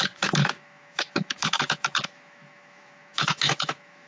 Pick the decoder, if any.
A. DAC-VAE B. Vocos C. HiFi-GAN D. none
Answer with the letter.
A